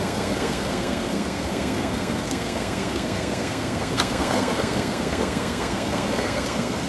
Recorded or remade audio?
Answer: remade